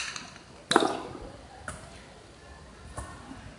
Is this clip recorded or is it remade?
recorded